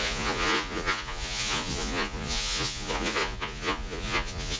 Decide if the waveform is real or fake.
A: fake